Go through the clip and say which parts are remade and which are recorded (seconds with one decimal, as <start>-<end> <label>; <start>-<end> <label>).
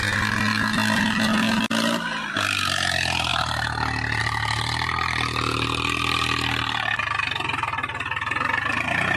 0.0-9.2 recorded